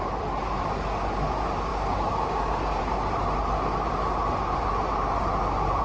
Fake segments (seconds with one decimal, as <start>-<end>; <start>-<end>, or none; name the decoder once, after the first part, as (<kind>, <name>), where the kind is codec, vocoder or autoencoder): 1.7-2.8 (codec, DAC)